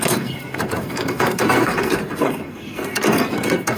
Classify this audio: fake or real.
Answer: fake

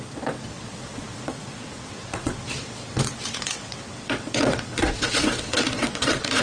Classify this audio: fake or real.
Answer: fake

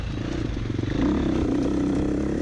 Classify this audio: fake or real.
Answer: real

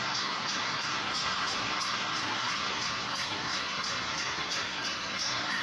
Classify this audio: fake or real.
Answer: fake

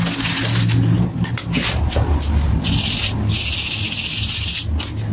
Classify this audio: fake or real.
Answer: real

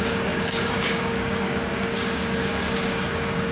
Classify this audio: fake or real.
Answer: fake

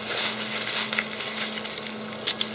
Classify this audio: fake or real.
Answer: real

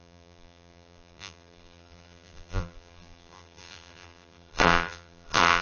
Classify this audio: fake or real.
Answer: fake